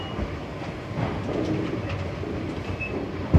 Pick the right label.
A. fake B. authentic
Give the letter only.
B